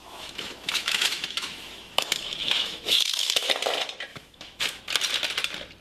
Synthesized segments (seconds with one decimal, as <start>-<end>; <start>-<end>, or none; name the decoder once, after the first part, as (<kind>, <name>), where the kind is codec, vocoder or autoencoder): 0.0-3.5 (autoencoder, DAC-VAE); 4.1-4.8